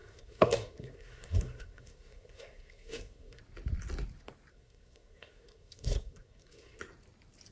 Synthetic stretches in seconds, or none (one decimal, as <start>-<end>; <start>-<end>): 0.0-3.4; 4.5-6.8